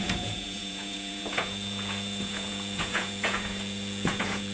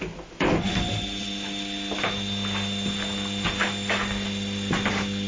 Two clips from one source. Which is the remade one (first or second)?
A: first